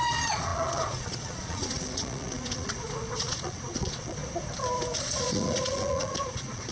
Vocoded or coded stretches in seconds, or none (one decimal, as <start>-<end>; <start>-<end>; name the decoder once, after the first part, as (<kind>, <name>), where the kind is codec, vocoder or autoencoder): 0.0-4.2 (vocoder, Vocos); 5.0-6.7